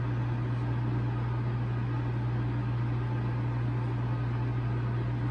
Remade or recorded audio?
recorded